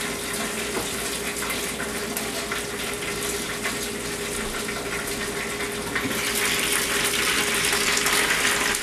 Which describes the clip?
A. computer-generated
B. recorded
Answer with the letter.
B